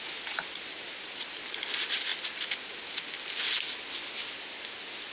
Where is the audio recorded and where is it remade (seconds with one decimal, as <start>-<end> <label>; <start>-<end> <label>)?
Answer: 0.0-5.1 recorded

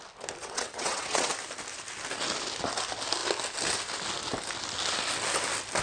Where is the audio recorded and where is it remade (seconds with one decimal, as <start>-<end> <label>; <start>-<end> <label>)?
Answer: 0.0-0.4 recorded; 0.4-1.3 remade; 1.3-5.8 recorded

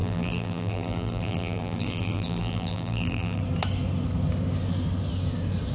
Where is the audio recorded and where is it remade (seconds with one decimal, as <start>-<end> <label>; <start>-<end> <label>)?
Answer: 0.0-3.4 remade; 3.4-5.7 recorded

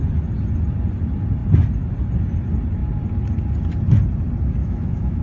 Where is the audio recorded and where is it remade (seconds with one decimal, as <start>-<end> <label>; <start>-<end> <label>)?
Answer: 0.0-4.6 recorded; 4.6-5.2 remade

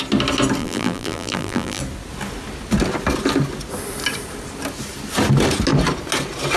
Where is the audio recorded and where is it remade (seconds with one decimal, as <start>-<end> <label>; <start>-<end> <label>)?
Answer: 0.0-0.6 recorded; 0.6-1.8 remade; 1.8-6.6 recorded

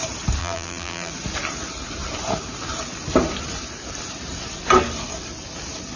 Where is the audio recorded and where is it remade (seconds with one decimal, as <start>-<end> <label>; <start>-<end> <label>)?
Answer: 0.0-0.4 recorded; 0.4-1.1 remade; 1.1-6.0 recorded

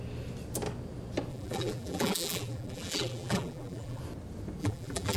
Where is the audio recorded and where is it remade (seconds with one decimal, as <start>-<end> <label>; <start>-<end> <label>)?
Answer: 0.0-1.3 recorded; 1.3-4.0 remade; 4.0-4.6 recorded; 4.6-5.2 remade